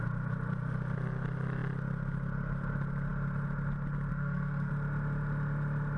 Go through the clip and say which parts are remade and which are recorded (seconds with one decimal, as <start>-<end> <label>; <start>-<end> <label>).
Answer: 0.0-4.1 recorded; 4.1-4.7 remade; 4.7-6.0 recorded